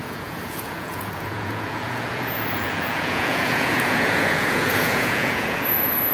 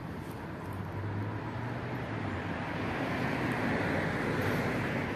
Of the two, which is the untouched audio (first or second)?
second